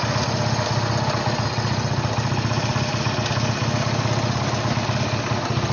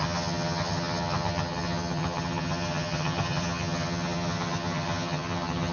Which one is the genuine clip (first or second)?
first